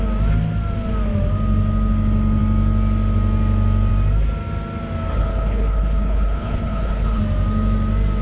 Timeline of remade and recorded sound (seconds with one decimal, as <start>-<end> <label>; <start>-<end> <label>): 0.0-5.1 recorded; 5.1-7.2 remade; 7.2-8.2 recorded